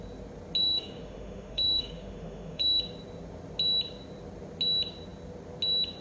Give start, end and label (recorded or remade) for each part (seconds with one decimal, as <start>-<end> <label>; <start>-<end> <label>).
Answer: 0.0-0.6 recorded; 0.6-2.8 remade; 2.8-6.0 recorded